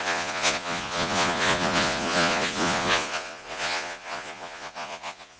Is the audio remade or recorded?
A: remade